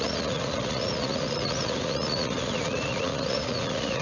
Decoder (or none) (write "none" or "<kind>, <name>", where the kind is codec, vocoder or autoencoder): vocoder, Vocos